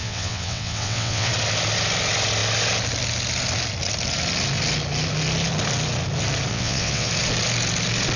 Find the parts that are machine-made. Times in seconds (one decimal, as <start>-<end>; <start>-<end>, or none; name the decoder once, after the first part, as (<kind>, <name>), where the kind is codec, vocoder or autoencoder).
0.0-1.3 (vocoder, WaveNeXt); 6.5-7.1